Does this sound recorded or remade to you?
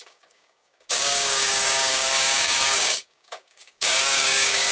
remade